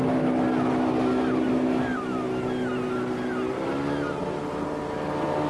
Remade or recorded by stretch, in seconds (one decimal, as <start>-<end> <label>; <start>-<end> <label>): 0.0-5.5 recorded